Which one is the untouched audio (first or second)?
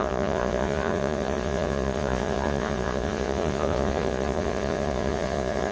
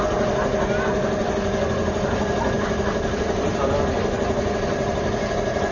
second